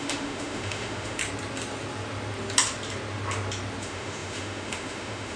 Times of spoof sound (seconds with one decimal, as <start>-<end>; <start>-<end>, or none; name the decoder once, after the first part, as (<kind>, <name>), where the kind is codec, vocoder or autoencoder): 0.0-1.2 (autoencoder, DAC-VAE); 3.8-5.4